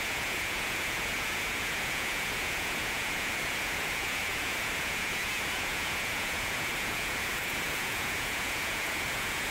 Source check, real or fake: fake